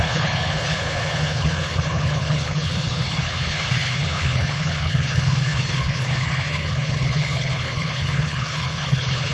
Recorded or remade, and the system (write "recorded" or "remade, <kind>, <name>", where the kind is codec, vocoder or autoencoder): remade, codec, HILCodec